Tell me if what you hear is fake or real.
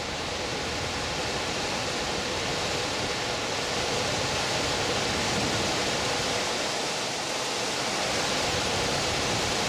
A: real